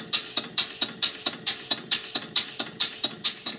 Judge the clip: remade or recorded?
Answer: remade